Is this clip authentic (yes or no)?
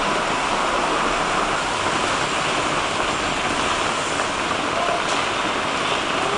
yes